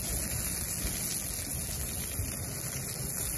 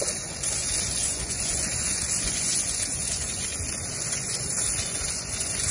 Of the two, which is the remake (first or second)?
second